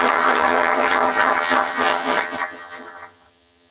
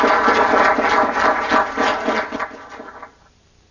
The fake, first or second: first